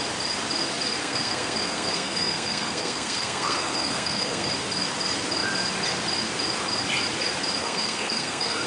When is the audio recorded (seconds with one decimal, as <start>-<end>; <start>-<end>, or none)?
0.0-1.0; 4.5-7.6